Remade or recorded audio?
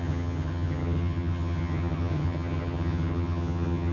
remade